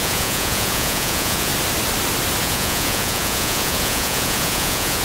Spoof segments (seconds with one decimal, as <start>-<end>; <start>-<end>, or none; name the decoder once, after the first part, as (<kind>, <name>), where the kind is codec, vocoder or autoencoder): 0.0-1.5 (vocoder, Vocos); 2.4-5.0